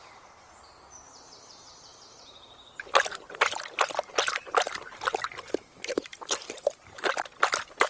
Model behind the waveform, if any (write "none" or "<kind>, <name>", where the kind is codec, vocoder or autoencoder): vocoder, BigVGAN v2